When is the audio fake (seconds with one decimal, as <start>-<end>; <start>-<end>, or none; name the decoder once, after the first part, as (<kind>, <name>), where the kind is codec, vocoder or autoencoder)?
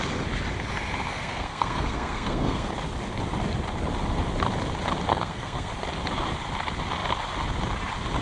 1.1-2.7 (codec, SNAC); 5.1-5.7